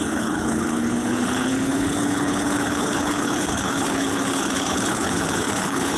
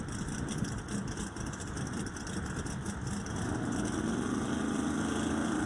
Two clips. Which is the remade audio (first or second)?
first